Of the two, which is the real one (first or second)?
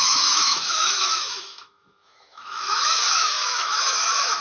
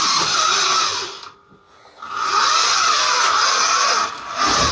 second